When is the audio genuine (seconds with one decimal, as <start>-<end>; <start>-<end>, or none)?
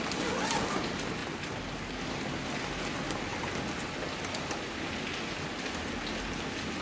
0.0-6.8